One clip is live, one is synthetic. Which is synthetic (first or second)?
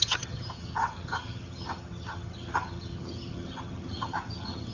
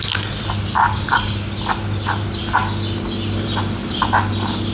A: first